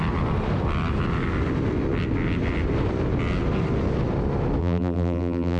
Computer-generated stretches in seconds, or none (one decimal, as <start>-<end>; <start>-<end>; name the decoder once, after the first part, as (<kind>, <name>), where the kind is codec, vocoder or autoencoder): 4.6-5.6 (vocoder, BigVGAN v2)